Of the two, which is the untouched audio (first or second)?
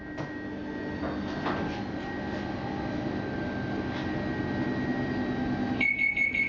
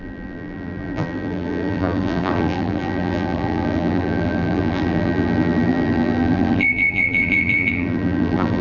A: first